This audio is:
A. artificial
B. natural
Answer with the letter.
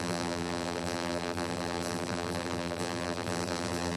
A